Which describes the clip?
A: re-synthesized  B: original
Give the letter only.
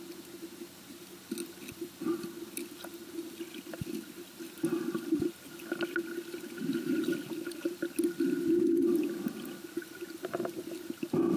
B